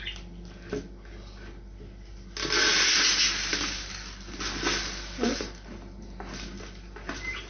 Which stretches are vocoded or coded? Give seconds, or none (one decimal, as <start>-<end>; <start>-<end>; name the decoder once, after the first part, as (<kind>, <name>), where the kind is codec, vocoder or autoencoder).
none